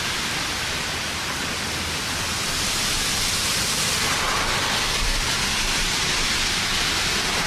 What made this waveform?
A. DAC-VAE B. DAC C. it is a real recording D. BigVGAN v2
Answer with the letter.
D